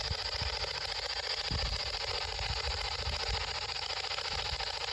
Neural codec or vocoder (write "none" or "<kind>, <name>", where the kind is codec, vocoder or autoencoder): none